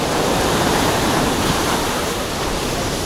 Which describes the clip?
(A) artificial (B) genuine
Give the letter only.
A